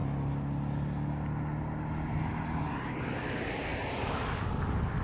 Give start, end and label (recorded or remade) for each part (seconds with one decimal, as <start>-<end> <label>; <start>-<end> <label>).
0.0-3.7 recorded; 3.7-4.5 remade; 4.5-5.0 recorded